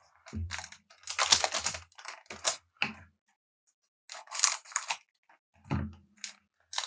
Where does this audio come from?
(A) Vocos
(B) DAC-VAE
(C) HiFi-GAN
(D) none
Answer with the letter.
D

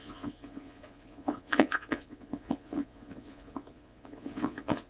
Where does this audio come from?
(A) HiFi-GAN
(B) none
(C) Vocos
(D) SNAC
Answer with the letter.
C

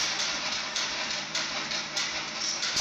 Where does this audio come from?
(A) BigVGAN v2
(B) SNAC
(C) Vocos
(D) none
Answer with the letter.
A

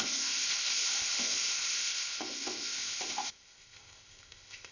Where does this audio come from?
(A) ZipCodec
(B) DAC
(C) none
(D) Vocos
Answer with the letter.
A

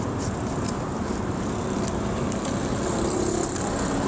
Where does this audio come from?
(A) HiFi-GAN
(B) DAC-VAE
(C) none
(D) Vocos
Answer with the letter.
C